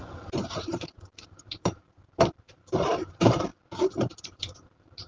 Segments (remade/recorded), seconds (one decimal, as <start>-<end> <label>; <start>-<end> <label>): 0.0-3.5 remade; 3.5-4.2 recorded; 4.2-5.1 remade

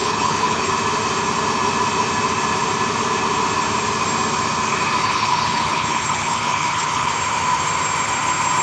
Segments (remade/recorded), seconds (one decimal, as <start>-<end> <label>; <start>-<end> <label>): 0.0-0.7 remade; 0.7-5.0 recorded; 5.0-7.1 remade; 7.1-8.6 recorded

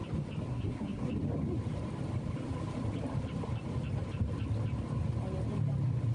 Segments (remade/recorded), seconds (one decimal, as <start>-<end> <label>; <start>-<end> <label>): 0.0-0.5 recorded; 0.5-1.1 remade; 1.1-6.1 recorded

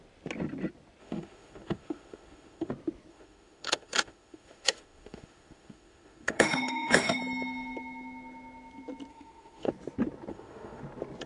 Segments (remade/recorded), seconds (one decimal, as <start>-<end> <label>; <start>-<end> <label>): 0.0-1.0 recorded; 1.0-2.7 remade; 2.7-3.1 recorded; 3.1-7.2 remade; 7.2-9.1 recorded; 9.1-9.7 remade; 9.7-10.3 recorded; 10.3-10.8 remade; 10.8-11.3 recorded

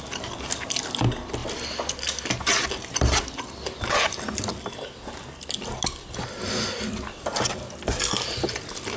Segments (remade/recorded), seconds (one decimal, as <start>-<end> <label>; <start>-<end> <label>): 0.0-9.0 recorded